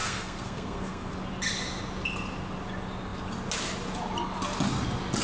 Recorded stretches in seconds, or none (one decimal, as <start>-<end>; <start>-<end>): 1.1-5.2